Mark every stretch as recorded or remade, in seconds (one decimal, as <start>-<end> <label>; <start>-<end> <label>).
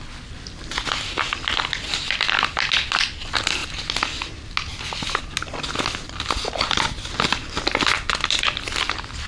0.0-9.3 recorded